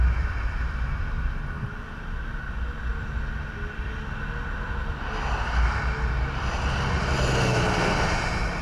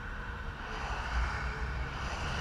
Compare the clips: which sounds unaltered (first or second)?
first